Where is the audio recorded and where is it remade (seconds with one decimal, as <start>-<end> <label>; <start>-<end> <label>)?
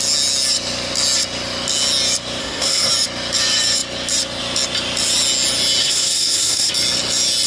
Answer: 0.0-2.4 recorded; 2.4-2.9 remade; 2.9-5.8 recorded; 5.8-6.7 remade; 6.7-7.5 recorded